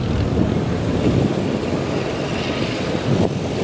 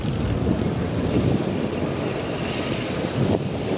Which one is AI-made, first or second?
second